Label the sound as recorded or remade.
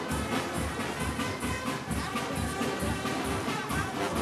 recorded